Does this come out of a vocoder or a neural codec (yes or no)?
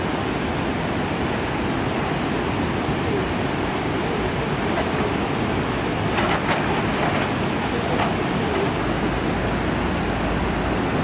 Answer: no